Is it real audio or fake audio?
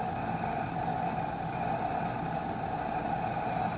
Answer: real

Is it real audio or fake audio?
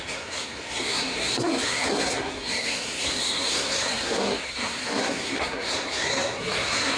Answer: fake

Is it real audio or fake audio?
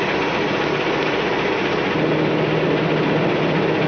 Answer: real